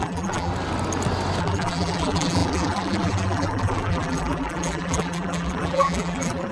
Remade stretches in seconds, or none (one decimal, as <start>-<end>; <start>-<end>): 0.0-0.5; 1.4-6.5